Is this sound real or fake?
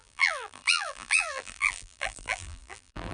fake